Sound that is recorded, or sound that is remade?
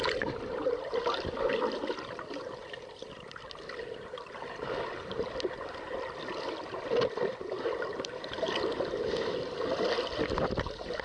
recorded